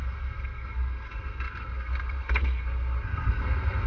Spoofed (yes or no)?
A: yes